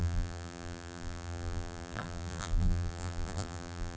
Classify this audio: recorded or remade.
remade